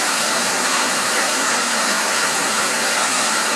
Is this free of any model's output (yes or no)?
no